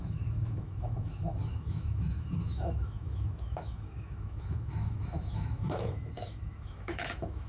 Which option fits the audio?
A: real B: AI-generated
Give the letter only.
B